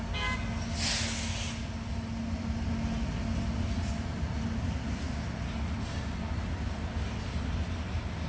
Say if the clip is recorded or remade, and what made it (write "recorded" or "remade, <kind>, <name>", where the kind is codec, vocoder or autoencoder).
recorded